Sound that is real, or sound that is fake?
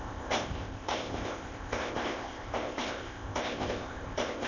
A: fake